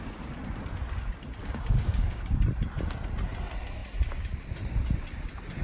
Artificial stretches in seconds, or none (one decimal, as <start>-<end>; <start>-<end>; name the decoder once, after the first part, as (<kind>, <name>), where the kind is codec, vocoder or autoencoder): 1.4-2.4 (codec, DAC)